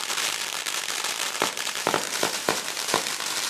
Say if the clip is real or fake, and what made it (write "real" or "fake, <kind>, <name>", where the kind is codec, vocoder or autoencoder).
fake, vocoder, BigVGAN v2